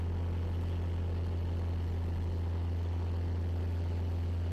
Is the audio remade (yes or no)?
no